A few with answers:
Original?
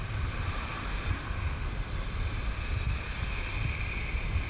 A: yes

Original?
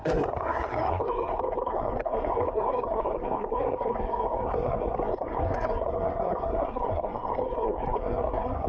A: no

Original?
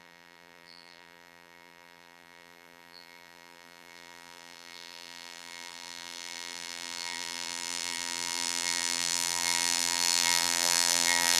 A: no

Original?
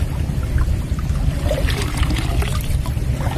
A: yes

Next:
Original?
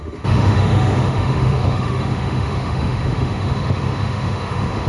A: no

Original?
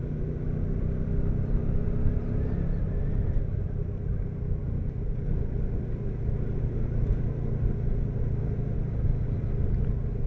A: yes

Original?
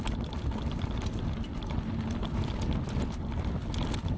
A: yes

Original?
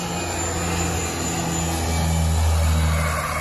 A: yes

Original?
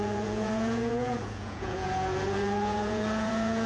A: no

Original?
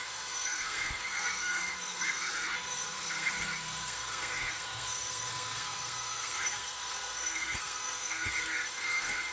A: no